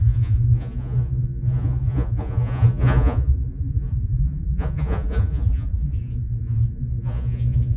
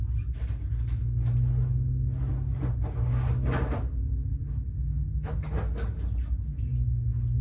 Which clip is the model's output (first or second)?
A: first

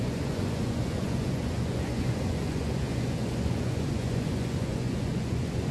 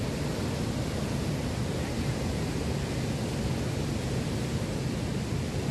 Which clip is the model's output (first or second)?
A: first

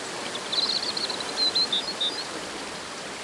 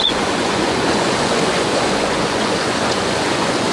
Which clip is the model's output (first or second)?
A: second